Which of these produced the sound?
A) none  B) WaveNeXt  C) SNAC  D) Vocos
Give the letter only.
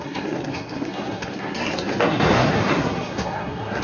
C